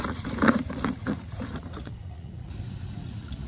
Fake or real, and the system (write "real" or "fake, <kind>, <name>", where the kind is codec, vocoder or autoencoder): fake, vocoder, Vocos